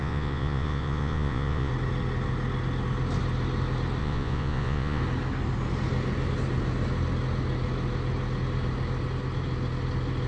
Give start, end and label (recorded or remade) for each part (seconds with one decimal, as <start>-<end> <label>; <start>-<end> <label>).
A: 0.0-1.7 remade; 1.7-4.0 recorded; 4.0-5.0 remade; 5.0-10.3 recorded